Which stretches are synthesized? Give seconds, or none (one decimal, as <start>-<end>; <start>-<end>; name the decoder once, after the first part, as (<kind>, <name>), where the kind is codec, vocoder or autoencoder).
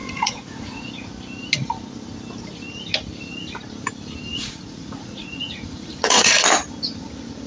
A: 0.0-0.9 (vocoder, Vocos); 4.3-6.4